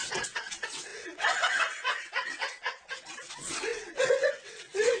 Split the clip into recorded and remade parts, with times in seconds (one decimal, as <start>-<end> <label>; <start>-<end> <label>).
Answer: 0.0-5.0 remade